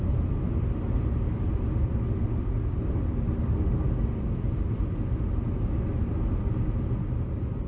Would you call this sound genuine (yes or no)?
yes